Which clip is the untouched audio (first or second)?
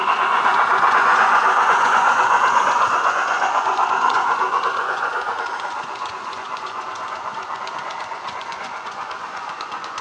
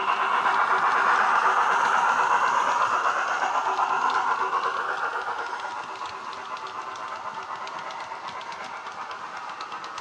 second